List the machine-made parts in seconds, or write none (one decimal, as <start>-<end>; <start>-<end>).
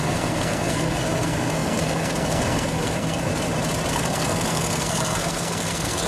0.0-3.3; 3.9-6.1